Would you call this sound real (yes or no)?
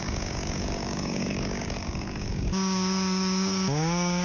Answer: no